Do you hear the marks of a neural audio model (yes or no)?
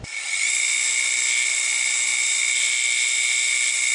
no